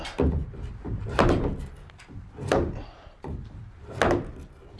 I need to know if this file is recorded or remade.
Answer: recorded